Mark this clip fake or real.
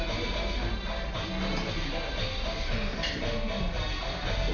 real